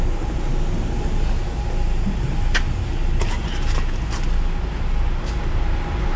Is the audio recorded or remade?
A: recorded